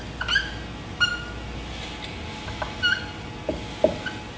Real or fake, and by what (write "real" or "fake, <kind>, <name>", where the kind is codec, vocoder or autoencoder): real